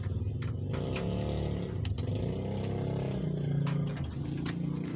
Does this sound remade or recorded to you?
recorded